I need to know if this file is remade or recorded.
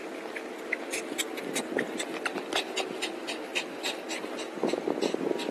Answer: recorded